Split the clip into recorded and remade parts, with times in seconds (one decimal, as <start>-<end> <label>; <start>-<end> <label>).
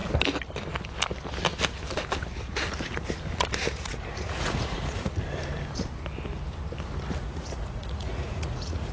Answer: 0.0-3.7 recorded; 3.7-5.1 remade; 5.1-7.2 recorded; 7.2-8.9 remade